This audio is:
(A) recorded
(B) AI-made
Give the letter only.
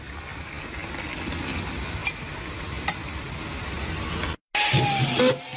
A